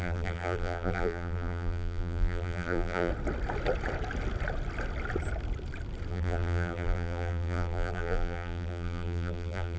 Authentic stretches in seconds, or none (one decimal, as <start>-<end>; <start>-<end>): 3.1-6.1